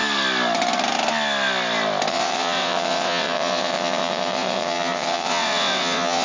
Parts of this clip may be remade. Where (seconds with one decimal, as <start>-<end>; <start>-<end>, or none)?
2.1-6.2